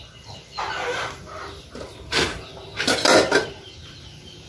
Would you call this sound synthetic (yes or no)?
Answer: no